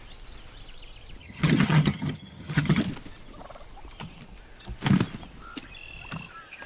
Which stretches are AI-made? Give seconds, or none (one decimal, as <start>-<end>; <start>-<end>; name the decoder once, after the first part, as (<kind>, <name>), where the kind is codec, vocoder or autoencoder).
1.2-2.8 (vocoder, HiFi-GAN)